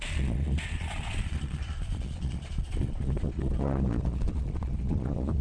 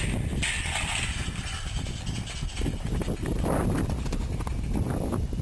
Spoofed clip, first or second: first